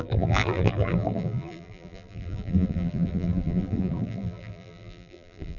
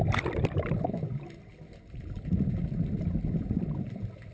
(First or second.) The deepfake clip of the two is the first